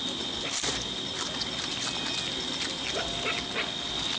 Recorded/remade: recorded